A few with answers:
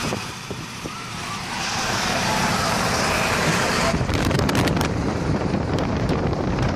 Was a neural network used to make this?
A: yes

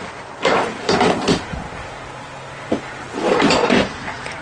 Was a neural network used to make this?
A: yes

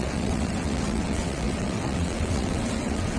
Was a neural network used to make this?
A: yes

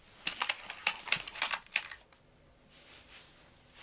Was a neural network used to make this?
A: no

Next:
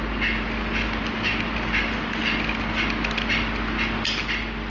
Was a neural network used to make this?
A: no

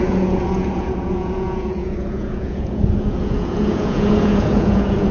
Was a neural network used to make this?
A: yes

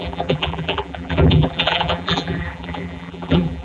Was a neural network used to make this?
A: yes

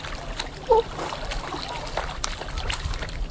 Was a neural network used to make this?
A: no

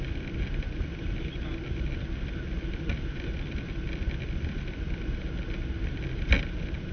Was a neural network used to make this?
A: no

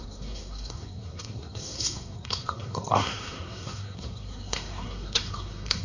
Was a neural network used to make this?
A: yes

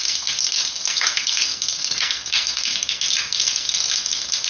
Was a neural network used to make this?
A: yes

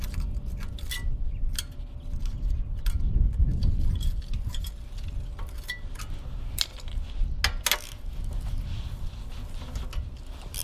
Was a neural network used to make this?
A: no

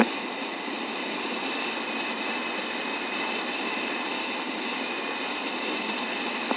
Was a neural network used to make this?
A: no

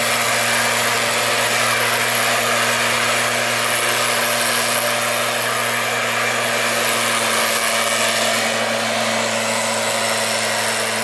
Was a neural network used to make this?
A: no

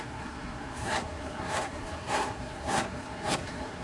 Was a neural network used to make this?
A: yes